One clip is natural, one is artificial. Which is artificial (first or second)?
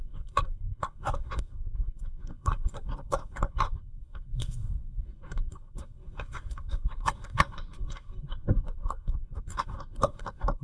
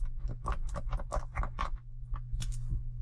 first